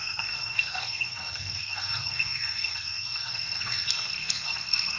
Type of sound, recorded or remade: remade